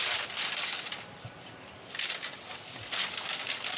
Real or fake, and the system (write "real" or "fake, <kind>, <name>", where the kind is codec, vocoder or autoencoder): real